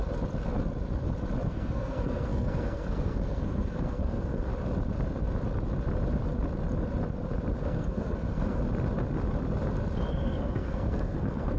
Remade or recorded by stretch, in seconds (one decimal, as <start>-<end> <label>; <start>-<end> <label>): 0.0-1.5 recorded; 1.5-4.5 remade; 4.5-7.5 recorded; 7.5-8.6 remade; 8.6-10.1 recorded; 10.1-11.6 remade